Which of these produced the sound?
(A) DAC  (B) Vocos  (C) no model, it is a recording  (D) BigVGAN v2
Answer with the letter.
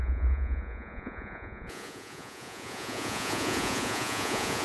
B